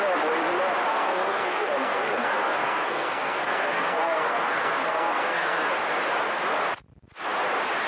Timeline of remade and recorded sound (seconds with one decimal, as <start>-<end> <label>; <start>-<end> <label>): 0.0-0.9 recorded; 0.9-5.6 remade; 5.6-7.9 recorded

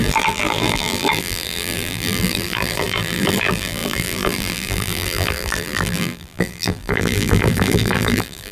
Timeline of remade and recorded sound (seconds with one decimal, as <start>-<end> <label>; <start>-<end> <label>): 0.0-8.5 remade